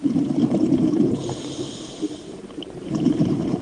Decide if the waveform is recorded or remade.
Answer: remade